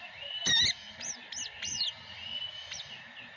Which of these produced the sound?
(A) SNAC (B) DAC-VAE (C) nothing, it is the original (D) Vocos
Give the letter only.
C